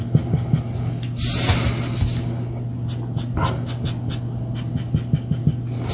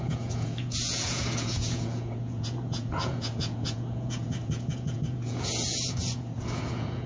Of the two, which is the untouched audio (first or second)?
first